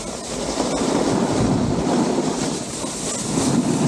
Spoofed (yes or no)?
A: no